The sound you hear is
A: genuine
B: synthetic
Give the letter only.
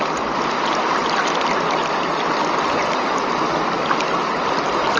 A